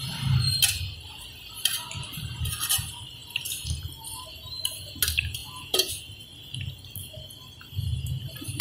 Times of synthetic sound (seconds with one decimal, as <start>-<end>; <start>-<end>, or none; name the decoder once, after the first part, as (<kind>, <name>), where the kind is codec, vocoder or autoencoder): 5.4-5.9 (vocoder, Vocos)

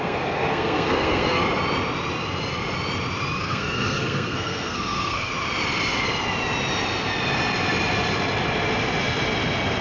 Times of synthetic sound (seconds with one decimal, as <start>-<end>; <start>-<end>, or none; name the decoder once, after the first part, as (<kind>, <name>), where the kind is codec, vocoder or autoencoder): 0.0-1.4 (codec, SNAC); 3.4-5.3

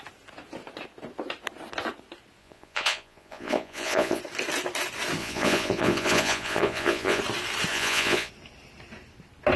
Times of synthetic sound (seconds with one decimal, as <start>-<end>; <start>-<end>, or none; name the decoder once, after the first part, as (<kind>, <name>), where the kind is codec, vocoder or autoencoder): 2.4-4.2 (vocoder, Vocos); 5.2-7.2; 7.7-8.3

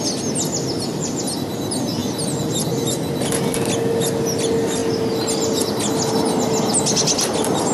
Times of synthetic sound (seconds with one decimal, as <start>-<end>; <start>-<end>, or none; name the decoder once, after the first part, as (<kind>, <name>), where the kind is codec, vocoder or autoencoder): none

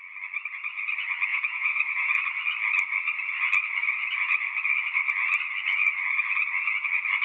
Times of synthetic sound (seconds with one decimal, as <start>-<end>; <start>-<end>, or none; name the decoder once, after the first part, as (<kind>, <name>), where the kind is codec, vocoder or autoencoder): 1.3-2.2 (vocoder, Vocos)

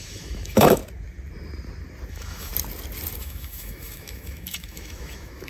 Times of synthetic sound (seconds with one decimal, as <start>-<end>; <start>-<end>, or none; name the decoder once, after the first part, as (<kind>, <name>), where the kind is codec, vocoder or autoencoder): 0.0-0.8 (autoencoder, DAC-VAE); 2.1-2.5; 3.2-5.5